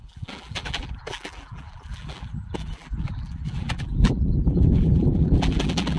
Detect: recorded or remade remade